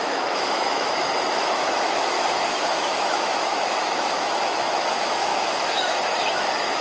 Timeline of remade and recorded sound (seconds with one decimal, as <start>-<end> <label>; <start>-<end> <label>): 0.0-6.8 remade